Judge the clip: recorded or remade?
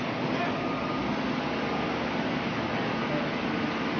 recorded